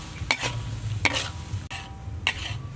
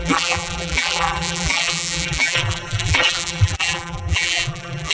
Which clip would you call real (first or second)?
first